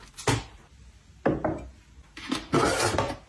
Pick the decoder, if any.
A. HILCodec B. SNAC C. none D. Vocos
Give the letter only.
C